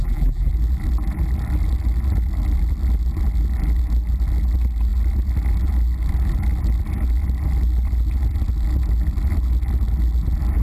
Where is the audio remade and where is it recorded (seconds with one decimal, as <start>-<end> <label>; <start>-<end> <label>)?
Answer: 0.0-0.5 remade; 0.5-10.6 recorded